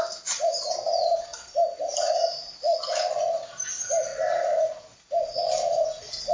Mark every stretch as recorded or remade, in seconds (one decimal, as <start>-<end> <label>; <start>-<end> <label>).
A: 0.0-6.3 recorded